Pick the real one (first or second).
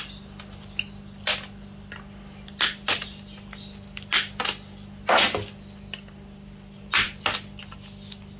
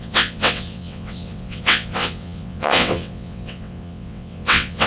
first